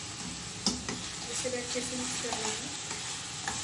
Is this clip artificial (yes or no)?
no